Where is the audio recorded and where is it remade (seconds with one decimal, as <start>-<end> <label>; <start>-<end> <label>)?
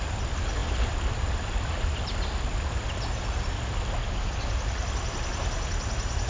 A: 0.0-6.3 recorded